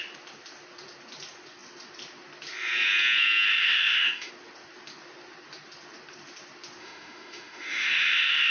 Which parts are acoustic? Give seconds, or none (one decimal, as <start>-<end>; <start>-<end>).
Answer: 0.0-3.5; 4.3-6.8

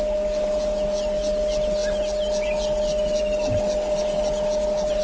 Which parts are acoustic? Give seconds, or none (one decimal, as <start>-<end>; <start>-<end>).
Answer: 0.0-5.0

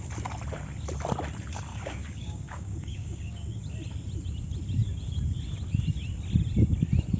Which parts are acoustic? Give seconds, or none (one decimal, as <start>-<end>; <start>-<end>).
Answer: 0.0-1.7; 3.6-7.2

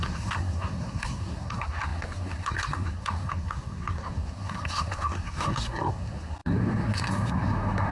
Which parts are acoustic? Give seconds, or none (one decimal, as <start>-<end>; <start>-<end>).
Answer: none